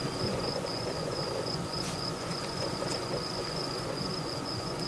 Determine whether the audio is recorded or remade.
remade